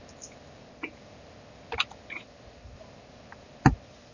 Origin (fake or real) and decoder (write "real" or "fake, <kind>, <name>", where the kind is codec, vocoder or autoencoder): fake, vocoder, BigVGAN v2